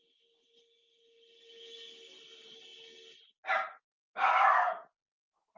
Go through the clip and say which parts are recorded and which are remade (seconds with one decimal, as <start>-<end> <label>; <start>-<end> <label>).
0.0-5.6 recorded